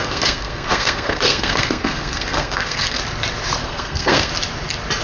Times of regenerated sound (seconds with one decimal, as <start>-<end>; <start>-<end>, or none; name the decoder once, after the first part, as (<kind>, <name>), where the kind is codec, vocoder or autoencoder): 0.0-3.0 (codec, SNAC); 3.6-4.3